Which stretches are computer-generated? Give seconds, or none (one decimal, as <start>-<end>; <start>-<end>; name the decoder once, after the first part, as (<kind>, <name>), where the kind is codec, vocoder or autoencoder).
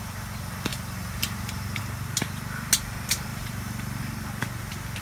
0.7-1.8 (vocoder, BigVGAN v2); 3.3-4.0